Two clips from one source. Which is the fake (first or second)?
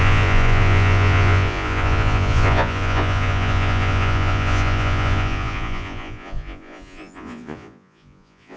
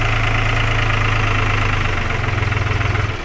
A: first